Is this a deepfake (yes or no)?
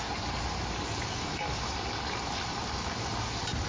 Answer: no